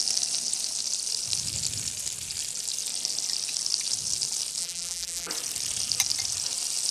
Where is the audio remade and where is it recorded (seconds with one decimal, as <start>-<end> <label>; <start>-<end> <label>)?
0.0-4.6 recorded; 4.6-5.3 remade; 5.3-6.9 recorded